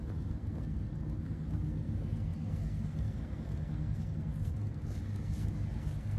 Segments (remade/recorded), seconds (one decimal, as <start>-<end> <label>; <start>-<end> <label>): 0.0-6.2 remade